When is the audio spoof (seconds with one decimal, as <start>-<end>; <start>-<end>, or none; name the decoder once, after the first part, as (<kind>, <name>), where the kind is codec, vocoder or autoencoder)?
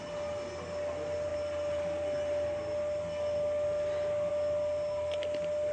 none